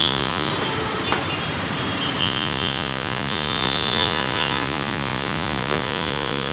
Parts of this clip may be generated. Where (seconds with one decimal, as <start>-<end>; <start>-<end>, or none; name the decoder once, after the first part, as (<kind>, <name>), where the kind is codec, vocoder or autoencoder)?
0.0-0.5 (vocoder, Vocos); 2.2-6.5